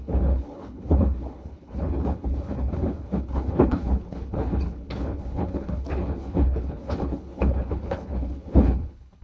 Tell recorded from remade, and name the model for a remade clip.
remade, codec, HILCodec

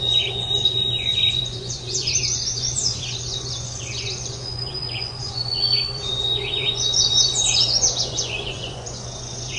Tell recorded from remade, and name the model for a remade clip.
remade, vocoder, Vocos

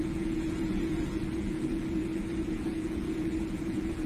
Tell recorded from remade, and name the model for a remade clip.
remade, vocoder, Vocos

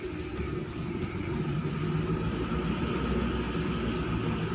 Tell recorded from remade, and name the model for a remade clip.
recorded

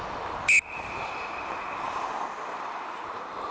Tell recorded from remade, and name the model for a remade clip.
recorded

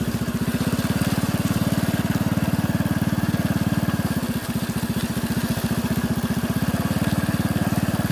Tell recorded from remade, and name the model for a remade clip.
recorded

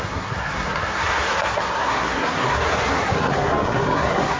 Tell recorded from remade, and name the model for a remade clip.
remade, codec, SNAC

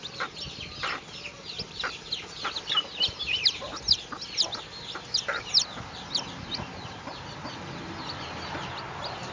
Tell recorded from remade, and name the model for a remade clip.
recorded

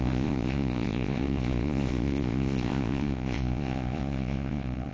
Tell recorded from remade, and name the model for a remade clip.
remade, vocoder, Vocos